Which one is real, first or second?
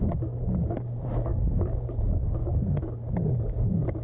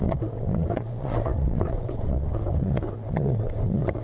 first